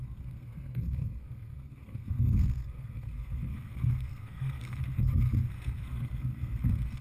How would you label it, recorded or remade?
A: remade